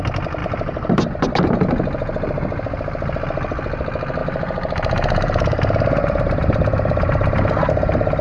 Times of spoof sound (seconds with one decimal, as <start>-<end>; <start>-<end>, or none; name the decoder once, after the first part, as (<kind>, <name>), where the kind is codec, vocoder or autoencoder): 0.4-1.0 (vocoder, BigVGAN v2); 4.2-7.7